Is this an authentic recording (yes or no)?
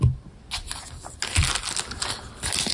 yes